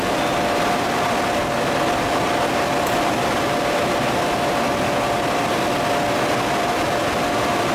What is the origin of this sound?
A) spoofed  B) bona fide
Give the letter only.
B